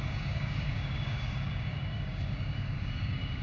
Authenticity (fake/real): fake